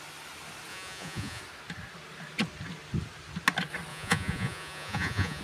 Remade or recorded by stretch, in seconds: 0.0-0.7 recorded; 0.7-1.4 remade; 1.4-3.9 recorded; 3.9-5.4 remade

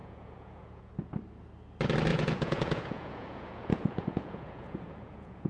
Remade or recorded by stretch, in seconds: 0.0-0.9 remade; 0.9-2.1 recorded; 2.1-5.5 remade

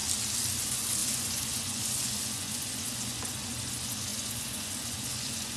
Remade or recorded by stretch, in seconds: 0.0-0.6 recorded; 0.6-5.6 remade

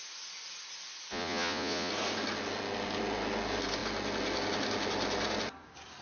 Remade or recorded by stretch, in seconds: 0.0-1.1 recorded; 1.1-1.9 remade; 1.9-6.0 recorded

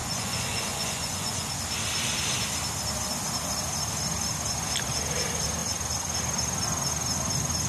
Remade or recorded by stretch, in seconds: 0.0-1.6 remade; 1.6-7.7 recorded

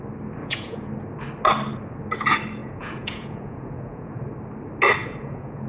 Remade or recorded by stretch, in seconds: 0.0-0.4 recorded; 0.4-0.9 remade; 0.9-2.6 recorded; 2.6-4.2 remade; 4.2-5.0 recorded; 5.0-5.7 remade

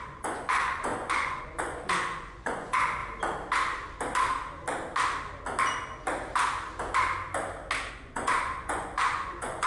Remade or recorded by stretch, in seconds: 0.0-3.0 remade; 3.0-7.9 recorded; 7.9-9.7 remade